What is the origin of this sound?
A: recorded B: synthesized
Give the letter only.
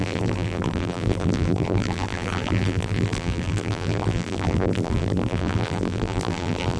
B